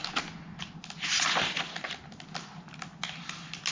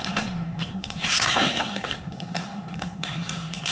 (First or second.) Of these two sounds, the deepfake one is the second